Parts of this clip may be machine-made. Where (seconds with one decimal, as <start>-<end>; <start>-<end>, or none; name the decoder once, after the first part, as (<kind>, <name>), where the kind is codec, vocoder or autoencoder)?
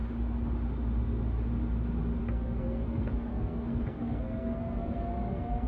2.2-5.7 (codec, SNAC)